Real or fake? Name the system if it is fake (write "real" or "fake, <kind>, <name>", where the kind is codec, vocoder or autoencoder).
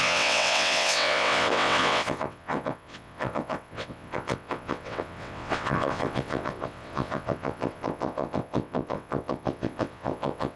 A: fake, vocoder, WaveNeXt